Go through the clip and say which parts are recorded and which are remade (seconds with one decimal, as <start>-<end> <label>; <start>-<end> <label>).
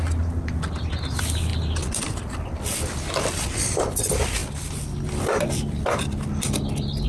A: 0.0-7.1 recorded